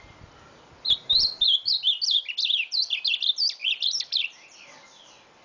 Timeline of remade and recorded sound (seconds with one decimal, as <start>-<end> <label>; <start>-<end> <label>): 0.0-3.6 recorded; 3.6-4.2 remade; 4.2-5.4 recorded